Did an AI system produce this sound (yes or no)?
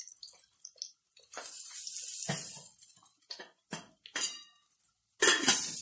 no